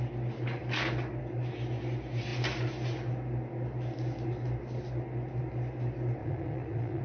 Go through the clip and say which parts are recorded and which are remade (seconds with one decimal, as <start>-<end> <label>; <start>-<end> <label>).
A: 0.0-6.2 recorded; 6.2-7.0 remade